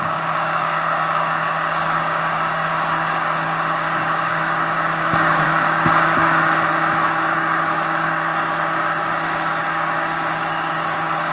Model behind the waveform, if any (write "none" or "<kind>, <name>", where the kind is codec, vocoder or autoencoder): codec, DAC